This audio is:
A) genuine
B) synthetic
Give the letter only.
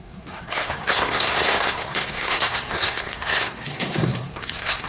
B